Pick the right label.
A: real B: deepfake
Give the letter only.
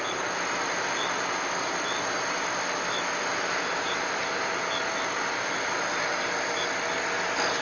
A